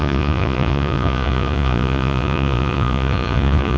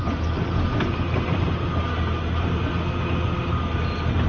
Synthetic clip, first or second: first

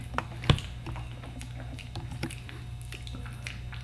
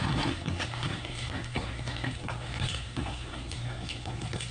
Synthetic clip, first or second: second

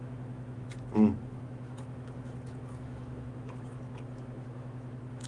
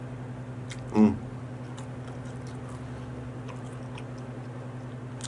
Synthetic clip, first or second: first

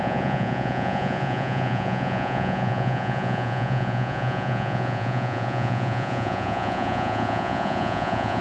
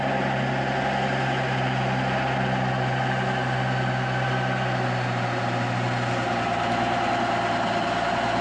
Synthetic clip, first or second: first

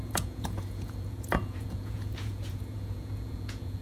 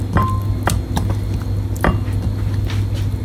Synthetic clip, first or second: first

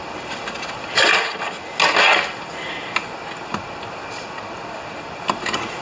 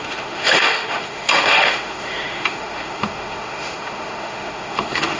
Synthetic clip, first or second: second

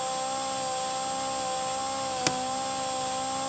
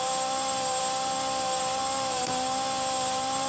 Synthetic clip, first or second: second